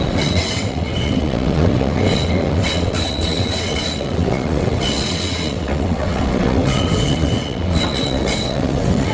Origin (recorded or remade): remade